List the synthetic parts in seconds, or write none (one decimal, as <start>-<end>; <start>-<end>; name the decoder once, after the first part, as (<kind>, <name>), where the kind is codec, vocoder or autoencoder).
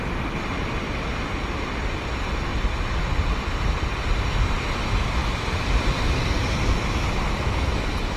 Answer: 2.5-3.1 (vocoder, BigVGAN v2); 5.2-6.1